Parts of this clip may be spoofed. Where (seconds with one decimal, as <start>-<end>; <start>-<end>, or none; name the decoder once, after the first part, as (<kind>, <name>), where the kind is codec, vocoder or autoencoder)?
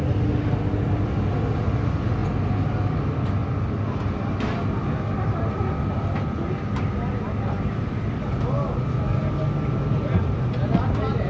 none